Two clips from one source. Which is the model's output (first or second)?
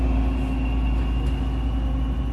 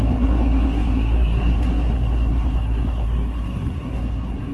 second